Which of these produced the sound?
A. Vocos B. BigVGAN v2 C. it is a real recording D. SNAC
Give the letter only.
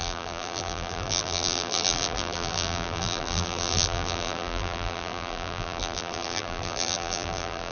B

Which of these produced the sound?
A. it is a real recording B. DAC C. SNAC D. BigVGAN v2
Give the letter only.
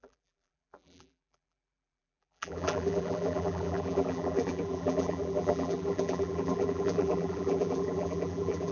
D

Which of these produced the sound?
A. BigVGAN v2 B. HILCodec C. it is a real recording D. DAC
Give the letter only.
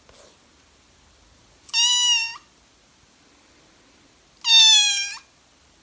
C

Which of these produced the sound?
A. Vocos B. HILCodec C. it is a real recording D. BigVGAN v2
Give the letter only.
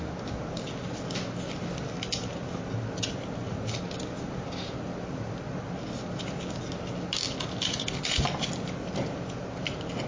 C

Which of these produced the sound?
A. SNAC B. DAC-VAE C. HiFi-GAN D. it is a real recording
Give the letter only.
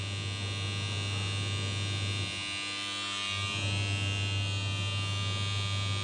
D